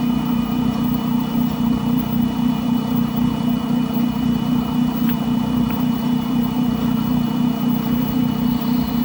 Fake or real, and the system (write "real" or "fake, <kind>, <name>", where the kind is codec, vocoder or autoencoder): fake, vocoder, BigVGAN v2